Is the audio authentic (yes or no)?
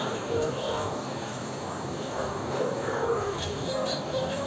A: no